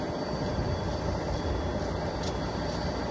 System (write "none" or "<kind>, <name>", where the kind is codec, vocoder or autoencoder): none